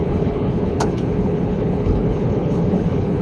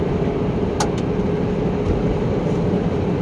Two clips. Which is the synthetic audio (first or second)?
first